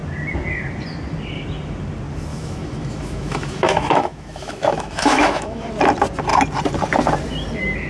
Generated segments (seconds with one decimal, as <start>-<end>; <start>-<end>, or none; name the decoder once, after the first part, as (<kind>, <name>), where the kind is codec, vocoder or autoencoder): 2.3-5.7 (autoencoder, DAC-VAE)